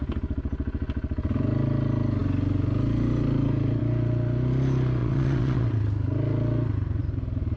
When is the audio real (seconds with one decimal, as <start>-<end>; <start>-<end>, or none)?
0.0-5.0; 5.8-7.6